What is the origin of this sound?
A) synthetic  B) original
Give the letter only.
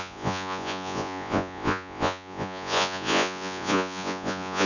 A